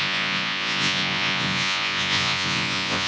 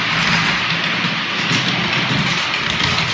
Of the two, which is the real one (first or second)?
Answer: second